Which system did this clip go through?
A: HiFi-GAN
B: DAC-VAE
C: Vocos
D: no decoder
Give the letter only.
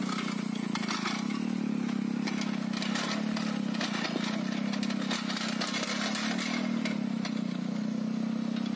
D